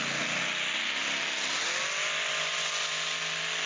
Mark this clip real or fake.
real